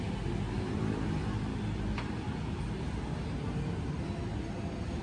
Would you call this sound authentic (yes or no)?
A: yes